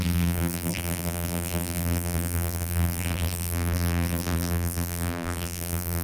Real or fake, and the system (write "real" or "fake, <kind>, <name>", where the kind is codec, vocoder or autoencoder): fake, vocoder, BigVGAN v2